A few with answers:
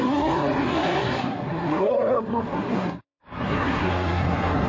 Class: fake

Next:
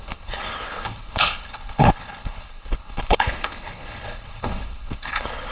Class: fake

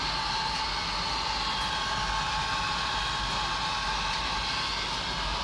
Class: real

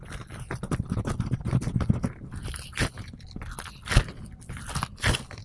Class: real